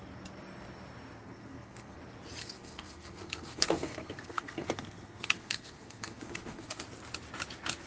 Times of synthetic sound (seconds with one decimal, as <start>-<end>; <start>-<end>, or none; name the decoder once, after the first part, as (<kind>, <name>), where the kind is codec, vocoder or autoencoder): 1.2-2.0 (codec, SNAC); 2.4-6.8